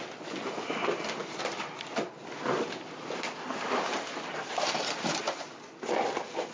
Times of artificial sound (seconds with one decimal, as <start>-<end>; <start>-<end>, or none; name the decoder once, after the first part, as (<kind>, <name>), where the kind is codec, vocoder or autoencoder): none